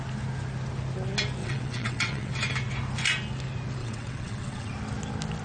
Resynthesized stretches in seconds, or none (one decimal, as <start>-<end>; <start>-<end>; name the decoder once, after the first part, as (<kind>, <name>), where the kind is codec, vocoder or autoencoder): 1.4-2.3 (vocoder, WaveNeXt); 3.8-4.7